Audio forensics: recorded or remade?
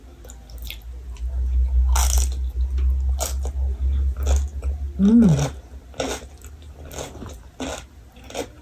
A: recorded